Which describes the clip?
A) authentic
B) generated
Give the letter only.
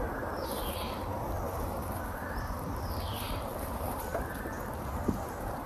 B